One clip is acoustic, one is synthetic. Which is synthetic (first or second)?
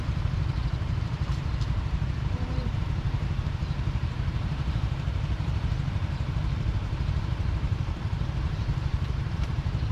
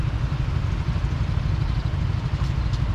first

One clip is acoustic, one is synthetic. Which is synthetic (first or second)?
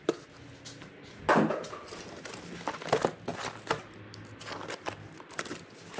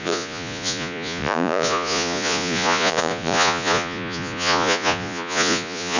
second